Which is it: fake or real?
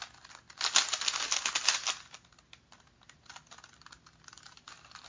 real